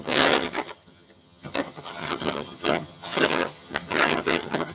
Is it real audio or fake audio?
fake